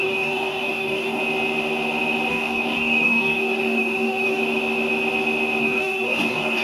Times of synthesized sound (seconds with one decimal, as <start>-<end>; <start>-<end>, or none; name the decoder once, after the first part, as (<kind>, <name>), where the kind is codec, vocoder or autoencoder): 0.0-1.2 (codec, DAC); 2.3-4.4; 5.6-6.6

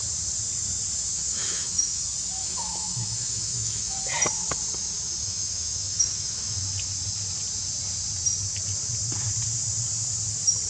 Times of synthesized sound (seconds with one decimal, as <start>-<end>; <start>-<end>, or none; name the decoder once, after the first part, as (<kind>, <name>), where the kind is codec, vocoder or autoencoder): 1.1-2.0 (autoencoder, DAC-VAE); 2.4-4.0; 5.2-6.6

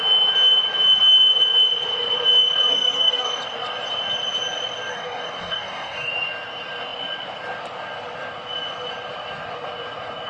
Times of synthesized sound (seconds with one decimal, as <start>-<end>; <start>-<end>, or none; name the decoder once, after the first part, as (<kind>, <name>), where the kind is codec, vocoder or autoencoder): 2.7-3.4 (codec, DAC); 4.9-6.1

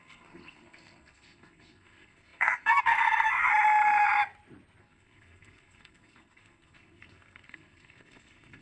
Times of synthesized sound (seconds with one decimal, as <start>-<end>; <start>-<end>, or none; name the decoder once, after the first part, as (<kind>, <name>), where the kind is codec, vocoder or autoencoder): 0.0-3.5 (codec, SNAC); 4.8-8.6

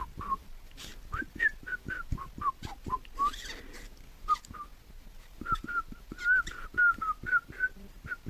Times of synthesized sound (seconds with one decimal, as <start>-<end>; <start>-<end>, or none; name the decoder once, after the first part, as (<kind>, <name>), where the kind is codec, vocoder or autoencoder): none

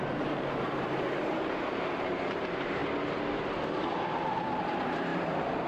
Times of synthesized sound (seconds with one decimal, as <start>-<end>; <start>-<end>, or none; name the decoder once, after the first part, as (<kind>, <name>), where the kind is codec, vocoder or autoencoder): 0.0-2.8 (vocoder, BigVGAN v2); 3.8-5.7

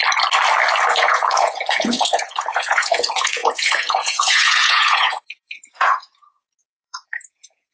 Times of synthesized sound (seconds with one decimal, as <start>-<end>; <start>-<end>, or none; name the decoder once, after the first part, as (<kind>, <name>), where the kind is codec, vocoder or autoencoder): 0.9-7.7 (vocoder, Vocos)